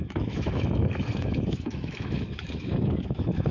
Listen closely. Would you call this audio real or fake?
fake